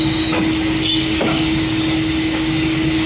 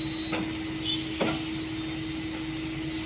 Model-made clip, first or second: first